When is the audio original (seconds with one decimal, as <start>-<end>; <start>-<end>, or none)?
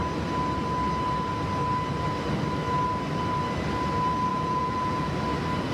0.0-4.3; 5.1-5.7